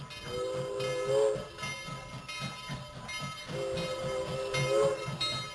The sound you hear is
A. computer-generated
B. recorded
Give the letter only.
B